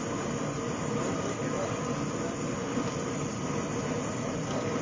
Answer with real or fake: real